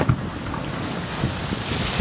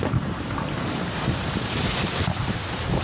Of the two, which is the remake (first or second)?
second